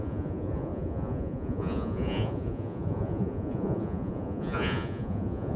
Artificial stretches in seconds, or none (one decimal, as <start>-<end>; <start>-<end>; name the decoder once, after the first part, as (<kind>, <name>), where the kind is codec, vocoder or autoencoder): 0.0-5.6 (vocoder, Vocos)